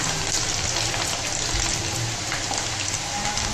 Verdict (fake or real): real